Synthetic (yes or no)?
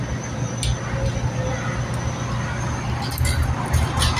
no